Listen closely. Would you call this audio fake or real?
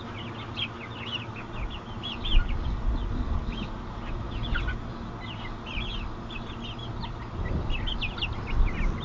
real